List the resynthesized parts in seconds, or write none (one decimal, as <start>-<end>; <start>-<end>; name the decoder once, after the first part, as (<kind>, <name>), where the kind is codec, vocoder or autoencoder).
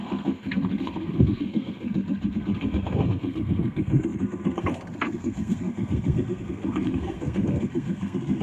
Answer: 0.0-8.4 (codec, SNAC)